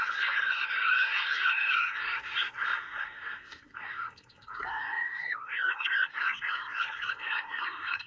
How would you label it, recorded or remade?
remade